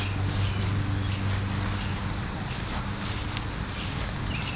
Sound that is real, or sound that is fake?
real